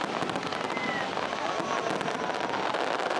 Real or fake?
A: real